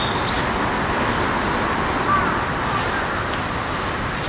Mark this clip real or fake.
real